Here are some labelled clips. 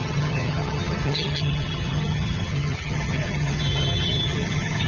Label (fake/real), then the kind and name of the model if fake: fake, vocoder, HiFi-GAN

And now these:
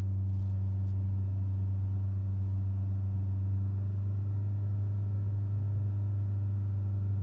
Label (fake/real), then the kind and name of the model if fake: real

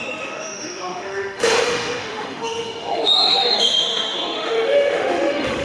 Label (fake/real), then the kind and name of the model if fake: fake, autoencoder, DAC-VAE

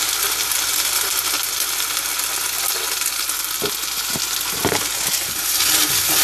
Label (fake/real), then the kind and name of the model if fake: real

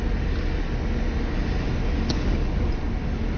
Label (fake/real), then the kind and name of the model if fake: real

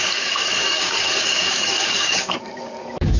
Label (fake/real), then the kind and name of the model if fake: fake, codec, DAC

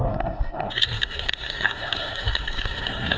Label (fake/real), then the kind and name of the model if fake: fake, codec, SNAC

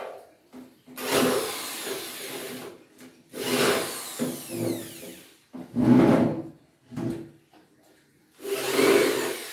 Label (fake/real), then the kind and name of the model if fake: real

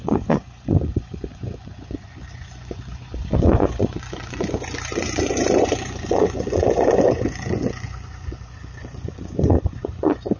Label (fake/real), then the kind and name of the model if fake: fake, vocoder, Vocos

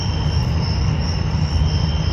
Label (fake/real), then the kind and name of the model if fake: real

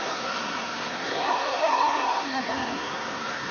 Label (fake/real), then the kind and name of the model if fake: fake, codec, SNAC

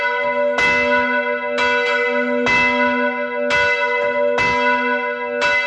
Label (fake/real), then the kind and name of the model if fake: real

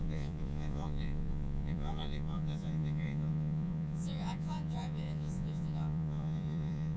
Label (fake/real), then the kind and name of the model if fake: fake, vocoder, Vocos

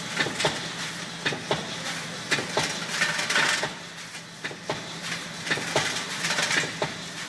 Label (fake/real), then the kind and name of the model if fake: real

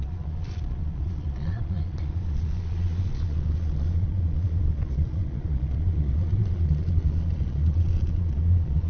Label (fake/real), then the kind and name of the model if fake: fake, vocoder, Vocos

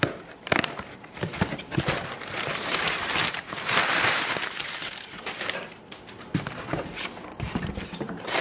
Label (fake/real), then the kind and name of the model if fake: fake, vocoder, BigVGAN v2